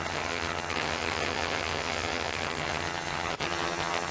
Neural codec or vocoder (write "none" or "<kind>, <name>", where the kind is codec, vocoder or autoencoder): vocoder, HiFi-GAN